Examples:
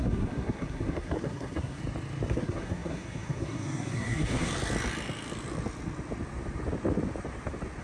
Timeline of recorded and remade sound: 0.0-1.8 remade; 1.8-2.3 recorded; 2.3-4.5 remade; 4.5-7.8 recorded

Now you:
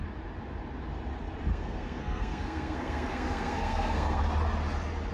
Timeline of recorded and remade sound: 0.0-1.5 recorded; 1.5-4.2 remade; 4.2-5.1 recorded

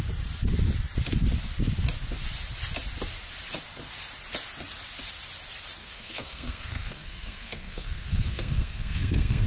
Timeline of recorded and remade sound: 0.0-5.8 recorded; 5.8-9.5 remade

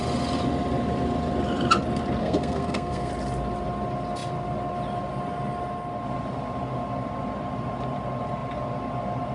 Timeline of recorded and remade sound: 0.0-2.2 recorded; 2.2-3.1 remade; 3.1-9.3 recorded